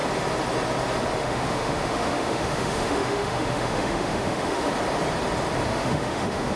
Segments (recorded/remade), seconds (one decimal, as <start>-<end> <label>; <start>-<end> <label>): 0.0-1.2 recorded; 1.2-4.7 remade; 4.7-5.7 recorded; 5.7-6.6 remade